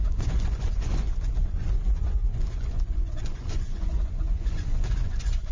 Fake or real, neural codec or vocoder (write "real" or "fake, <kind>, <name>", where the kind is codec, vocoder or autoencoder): fake, vocoder, Vocos